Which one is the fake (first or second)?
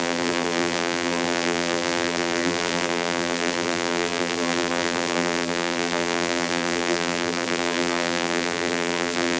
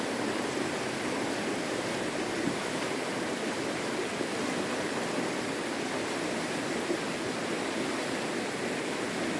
first